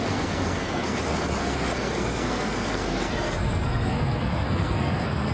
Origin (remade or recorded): remade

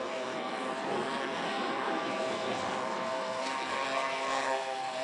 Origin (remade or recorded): remade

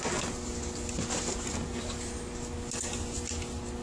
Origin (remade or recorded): recorded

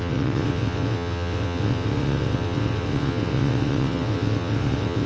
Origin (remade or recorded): remade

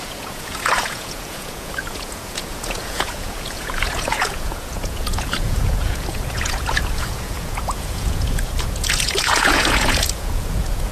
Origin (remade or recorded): remade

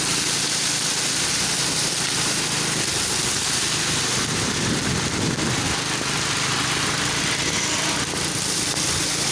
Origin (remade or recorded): recorded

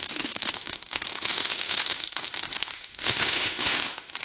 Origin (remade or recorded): remade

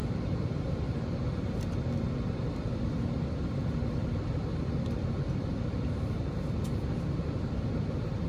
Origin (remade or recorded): remade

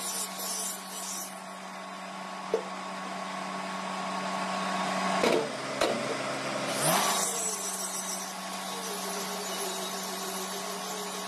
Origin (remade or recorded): recorded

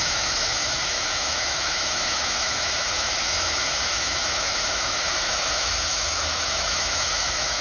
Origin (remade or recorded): remade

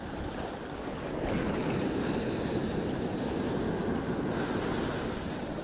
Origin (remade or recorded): recorded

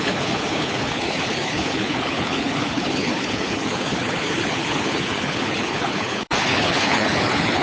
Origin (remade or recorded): remade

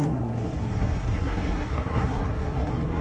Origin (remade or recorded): remade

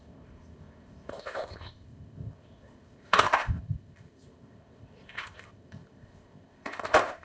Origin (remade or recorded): remade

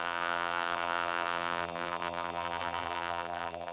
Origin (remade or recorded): remade